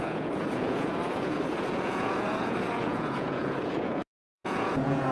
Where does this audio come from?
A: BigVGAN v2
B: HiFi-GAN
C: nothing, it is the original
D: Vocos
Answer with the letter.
D